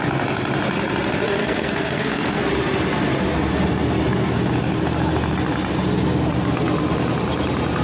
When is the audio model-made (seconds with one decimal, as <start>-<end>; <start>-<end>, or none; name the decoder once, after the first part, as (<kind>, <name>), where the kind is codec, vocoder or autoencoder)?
1.4-2.4 (codec, SNAC)